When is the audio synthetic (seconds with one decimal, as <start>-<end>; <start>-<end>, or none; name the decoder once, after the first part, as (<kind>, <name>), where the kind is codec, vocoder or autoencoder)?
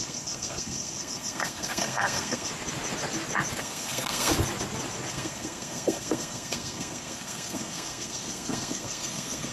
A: 0.0-2.5 (codec, SNAC); 3.6-4.3; 5.1-9.5